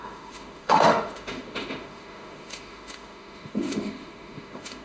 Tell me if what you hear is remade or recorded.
remade